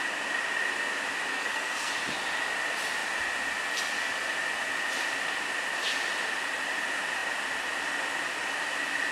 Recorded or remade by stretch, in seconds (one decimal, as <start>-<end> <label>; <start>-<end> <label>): 0.0-1.3 recorded; 1.3-1.9 remade; 1.9-9.1 recorded

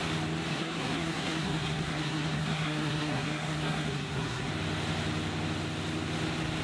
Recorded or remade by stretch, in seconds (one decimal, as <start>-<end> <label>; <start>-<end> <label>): 0.0-0.5 recorded; 0.5-4.5 remade; 4.5-6.6 recorded

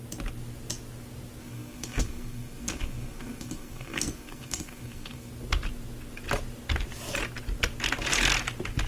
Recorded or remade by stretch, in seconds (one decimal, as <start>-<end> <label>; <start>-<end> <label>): 0.0-1.4 recorded; 1.4-5.3 remade; 5.3-8.9 recorded

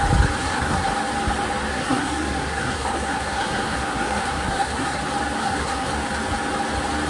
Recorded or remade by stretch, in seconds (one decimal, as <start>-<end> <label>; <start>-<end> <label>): 0.0-0.4 recorded; 0.4-0.9 remade; 0.9-1.7 recorded; 1.7-5.0 remade; 5.0-5.4 recorded; 5.4-5.9 remade; 5.9-7.1 recorded

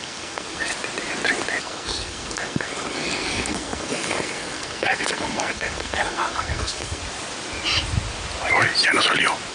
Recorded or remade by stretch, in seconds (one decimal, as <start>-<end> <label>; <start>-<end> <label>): 0.0-0.7 remade; 0.7-1.6 recorded; 1.6-7.0 remade; 7.0-9.5 recorded

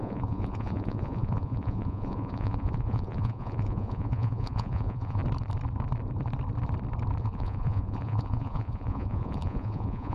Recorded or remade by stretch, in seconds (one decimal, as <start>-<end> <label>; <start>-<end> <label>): 0.0-5.2 remade; 5.2-7.2 recorded; 7.2-10.1 remade

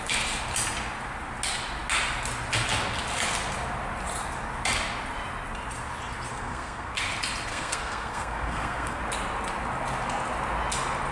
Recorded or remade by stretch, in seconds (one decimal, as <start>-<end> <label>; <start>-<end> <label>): 0.0-6.3 recorded; 6.3-7.0 remade; 7.0-7.5 recorded; 7.5-9.0 remade; 9.0-11.1 recorded